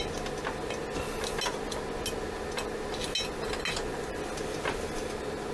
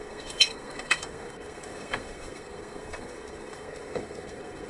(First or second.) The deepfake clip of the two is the second